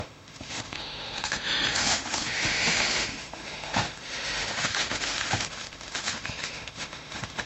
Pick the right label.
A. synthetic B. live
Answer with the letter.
A